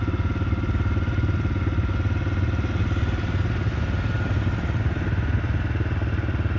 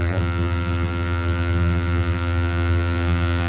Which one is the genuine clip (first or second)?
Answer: first